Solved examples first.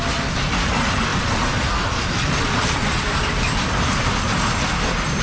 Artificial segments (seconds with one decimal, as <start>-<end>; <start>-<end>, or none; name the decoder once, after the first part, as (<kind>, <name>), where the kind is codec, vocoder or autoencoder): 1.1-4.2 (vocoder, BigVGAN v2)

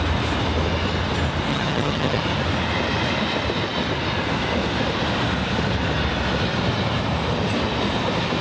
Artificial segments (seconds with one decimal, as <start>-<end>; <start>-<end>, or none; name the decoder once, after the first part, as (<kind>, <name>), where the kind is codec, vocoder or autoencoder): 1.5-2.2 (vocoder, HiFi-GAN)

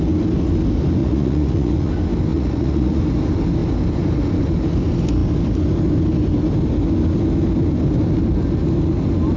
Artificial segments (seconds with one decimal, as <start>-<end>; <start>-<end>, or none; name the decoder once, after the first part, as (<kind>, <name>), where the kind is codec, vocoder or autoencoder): 1.0-1.9 (vocoder, Vocos); 2.3-3.0